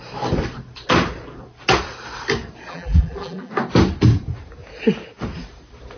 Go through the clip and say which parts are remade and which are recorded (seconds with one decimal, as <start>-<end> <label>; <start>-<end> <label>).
0.0-2.7 recorded; 2.7-3.5 remade; 3.5-6.0 recorded